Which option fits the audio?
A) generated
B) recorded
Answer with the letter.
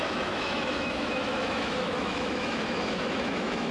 A